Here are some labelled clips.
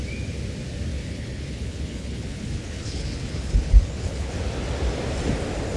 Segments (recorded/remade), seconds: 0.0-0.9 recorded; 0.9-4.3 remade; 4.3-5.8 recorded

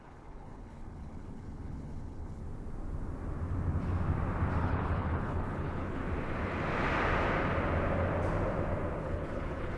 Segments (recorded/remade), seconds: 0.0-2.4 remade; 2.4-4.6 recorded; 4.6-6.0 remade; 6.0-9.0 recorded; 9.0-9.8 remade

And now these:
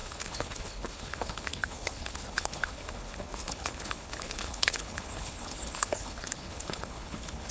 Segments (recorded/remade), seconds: 0.0-7.5 remade

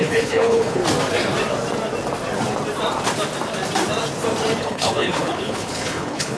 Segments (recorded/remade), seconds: 0.0-0.8 remade; 0.8-4.6 recorded; 4.6-6.4 remade

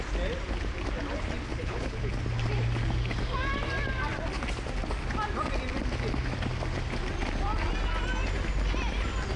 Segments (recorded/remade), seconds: 0.0-1.5 recorded; 1.5-2.1 remade; 2.1-9.4 recorded

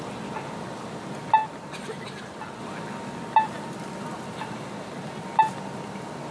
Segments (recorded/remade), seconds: 0.0-6.3 recorded

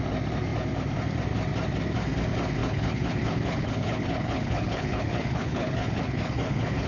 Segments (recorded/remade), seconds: 0.0-2.6 recorded; 2.6-6.9 remade

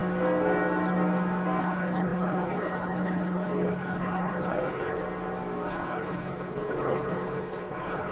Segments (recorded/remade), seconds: 0.0-1.6 recorded; 1.6-5.0 remade; 5.0-5.7 recorded; 5.7-8.1 remade